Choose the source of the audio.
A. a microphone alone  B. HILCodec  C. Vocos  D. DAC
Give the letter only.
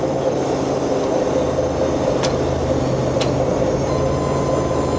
A